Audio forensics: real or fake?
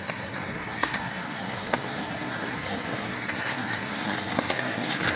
fake